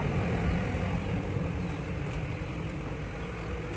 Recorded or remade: recorded